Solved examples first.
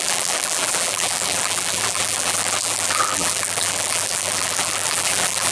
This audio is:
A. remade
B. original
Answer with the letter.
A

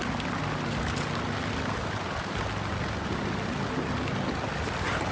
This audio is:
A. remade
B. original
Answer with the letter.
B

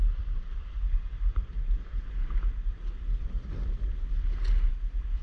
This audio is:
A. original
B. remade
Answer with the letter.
A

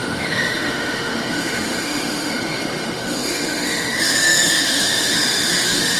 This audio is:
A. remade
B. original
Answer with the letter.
A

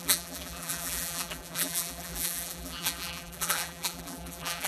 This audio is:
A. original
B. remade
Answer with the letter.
B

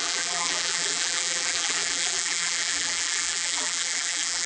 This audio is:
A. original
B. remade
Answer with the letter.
B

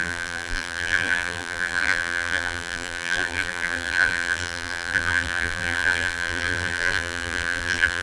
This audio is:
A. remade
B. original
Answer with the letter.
A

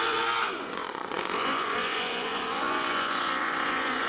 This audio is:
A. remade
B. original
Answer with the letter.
A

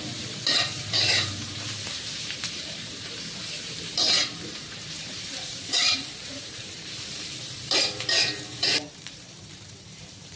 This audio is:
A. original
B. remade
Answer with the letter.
B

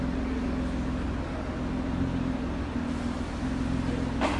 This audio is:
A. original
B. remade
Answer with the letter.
A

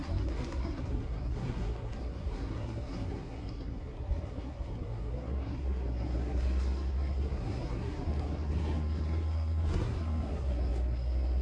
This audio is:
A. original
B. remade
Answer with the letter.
B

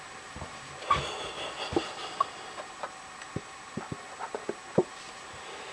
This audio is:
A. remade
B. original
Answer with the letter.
B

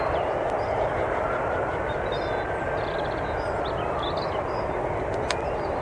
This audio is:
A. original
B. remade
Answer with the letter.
A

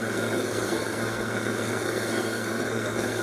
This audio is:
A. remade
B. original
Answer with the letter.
A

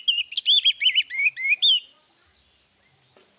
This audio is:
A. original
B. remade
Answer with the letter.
A